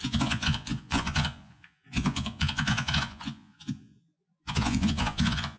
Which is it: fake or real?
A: fake